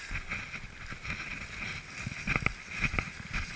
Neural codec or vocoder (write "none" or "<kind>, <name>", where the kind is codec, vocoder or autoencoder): none